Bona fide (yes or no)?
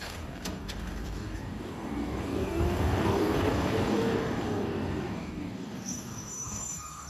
no